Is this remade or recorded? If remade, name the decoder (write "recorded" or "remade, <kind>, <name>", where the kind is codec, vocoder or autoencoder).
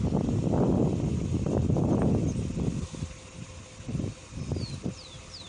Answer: recorded